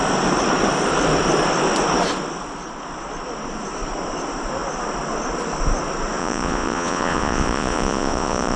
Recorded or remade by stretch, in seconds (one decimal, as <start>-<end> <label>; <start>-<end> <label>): 0.0-6.2 recorded; 6.2-8.6 remade